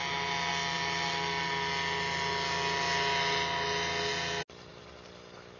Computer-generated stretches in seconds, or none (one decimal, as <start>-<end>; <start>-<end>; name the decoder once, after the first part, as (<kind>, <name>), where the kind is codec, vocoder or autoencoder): none